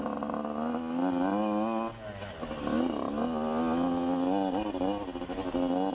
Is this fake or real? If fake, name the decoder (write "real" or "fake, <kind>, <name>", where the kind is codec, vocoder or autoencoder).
real